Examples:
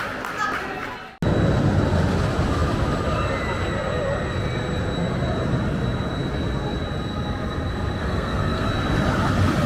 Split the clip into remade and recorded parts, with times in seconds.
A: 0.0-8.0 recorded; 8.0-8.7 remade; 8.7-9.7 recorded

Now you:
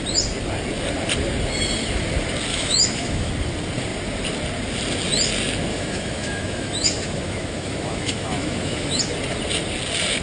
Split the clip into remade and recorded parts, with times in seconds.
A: 0.0-2.5 recorded; 2.5-3.3 remade; 3.3-5.7 recorded; 5.7-9.0 remade; 9.0-10.2 recorded

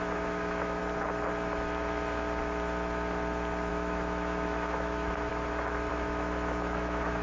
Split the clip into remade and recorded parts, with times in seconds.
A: 0.0-0.8 remade; 0.8-3.7 recorded; 3.7-5.3 remade; 5.3-5.9 recorded; 5.9-7.2 remade

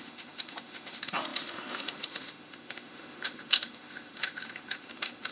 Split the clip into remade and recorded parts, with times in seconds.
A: 0.0-5.3 remade

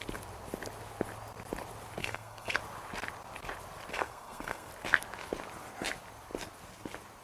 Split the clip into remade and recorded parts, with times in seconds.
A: 0.0-2.0 recorded; 2.0-2.6 remade; 2.6-3.9 recorded; 3.9-4.7 remade; 4.7-7.2 recorded

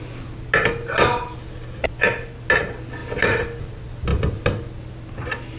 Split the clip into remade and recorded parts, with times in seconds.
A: 0.0-5.6 recorded

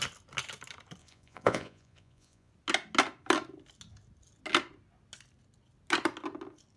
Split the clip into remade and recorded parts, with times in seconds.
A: 0.0-1.0 recorded; 1.0-2.5 remade; 2.5-6.8 recorded

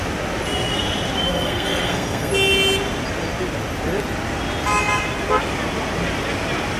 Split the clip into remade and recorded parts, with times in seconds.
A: 0.0-1.3 recorded; 1.3-2.3 remade; 2.3-6.8 recorded